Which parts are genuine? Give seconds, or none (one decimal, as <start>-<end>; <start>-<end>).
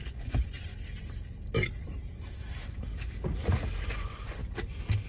0.7-3.8; 4.4-5.1